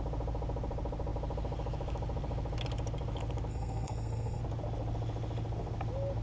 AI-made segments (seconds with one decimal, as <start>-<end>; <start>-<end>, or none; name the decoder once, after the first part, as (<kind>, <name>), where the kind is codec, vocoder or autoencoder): 3.5-4.4 (codec, SNAC)